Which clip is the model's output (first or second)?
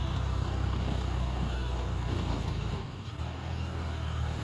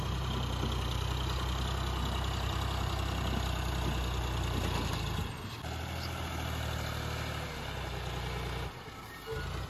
first